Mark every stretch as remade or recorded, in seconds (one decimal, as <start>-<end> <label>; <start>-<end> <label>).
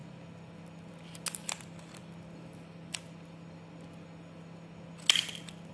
0.0-5.7 recorded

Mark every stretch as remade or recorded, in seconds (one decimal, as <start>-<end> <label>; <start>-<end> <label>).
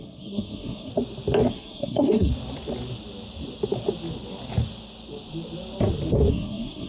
0.0-0.9 remade; 0.9-1.5 recorded; 1.5-2.3 remade; 2.3-6.3 recorded; 6.3-6.9 remade